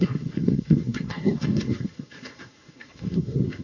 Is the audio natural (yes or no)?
no